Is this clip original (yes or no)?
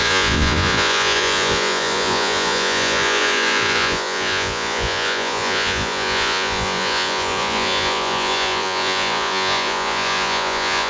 no